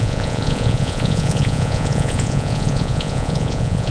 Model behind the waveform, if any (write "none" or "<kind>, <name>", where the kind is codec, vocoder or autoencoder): vocoder, Vocos